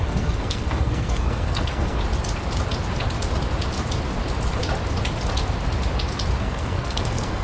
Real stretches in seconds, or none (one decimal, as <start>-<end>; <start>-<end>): 2.0-6.4